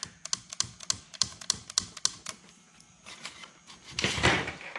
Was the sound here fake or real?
real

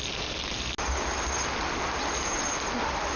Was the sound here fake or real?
real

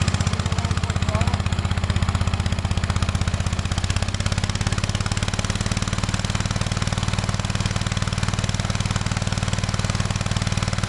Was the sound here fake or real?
real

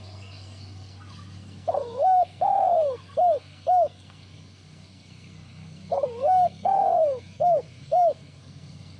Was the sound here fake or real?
fake